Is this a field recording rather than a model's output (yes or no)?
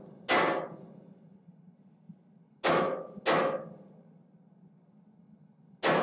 yes